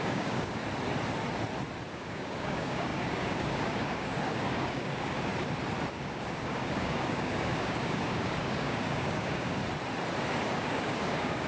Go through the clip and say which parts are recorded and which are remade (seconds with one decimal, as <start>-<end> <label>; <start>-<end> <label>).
0.0-0.6 remade; 0.6-1.9 recorded; 1.9-5.3 remade; 5.3-5.9 recorded; 5.9-9.6 remade; 9.6-10.3 recorded; 10.3-11.5 remade